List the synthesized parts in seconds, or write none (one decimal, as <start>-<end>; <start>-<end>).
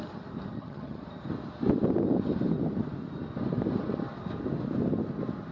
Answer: 0.5-1.0